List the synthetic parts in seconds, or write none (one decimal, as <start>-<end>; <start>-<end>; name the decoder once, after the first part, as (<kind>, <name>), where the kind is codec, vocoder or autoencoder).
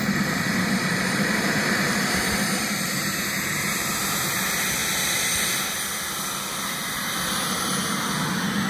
0.0-4.8 (vocoder, BigVGAN v2)